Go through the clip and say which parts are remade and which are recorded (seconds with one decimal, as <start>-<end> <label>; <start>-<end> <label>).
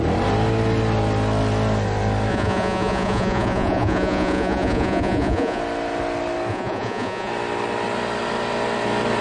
0.0-2.3 recorded; 2.3-5.6 remade; 5.6-6.5 recorded; 6.5-7.3 remade; 7.3-9.2 recorded